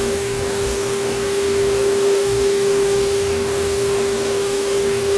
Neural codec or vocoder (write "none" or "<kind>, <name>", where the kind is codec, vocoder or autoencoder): codec, DAC